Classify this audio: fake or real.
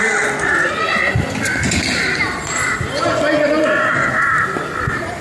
real